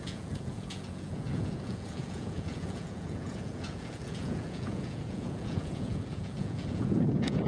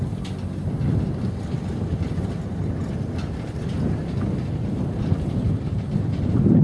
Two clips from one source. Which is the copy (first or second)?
first